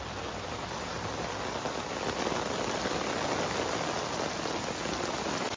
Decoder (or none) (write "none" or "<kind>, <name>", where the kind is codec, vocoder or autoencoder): none